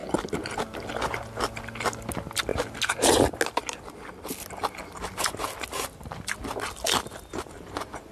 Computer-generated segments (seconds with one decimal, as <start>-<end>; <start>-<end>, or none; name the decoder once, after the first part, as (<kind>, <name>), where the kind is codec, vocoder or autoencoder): none